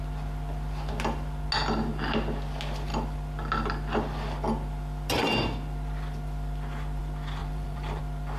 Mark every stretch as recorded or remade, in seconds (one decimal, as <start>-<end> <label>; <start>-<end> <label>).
0.0-7.4 recorded; 7.4-8.0 remade; 8.0-8.4 recorded